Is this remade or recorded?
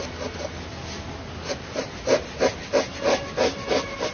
recorded